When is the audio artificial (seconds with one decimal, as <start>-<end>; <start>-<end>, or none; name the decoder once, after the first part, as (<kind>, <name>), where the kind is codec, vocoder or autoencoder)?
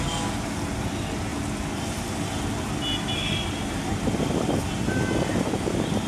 1.3-4.5 (vocoder, BigVGAN v2)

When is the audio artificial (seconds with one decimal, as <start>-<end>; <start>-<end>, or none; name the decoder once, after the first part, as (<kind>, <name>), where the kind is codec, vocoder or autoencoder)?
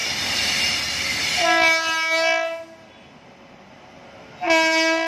none